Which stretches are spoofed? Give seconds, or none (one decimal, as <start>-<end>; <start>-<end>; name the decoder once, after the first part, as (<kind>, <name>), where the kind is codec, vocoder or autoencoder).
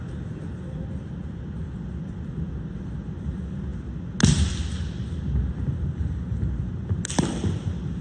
none